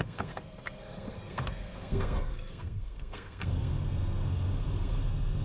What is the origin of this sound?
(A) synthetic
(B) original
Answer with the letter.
A